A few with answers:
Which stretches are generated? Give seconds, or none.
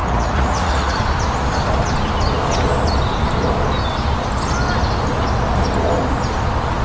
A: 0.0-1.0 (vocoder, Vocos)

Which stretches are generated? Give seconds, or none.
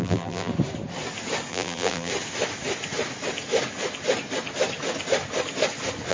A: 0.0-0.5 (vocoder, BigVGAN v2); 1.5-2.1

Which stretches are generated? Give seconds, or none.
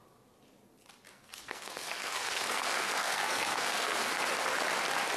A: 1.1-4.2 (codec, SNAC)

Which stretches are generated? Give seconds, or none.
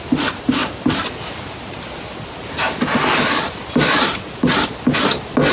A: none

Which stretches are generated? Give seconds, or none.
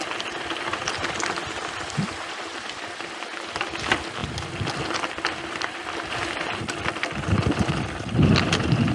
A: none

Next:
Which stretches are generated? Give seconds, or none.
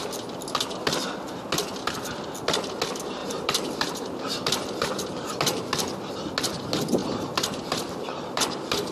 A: 3.2-5.4 (vocoder, BigVGAN v2); 7.0-8.4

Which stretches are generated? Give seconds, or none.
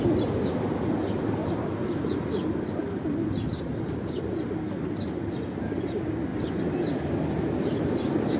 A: none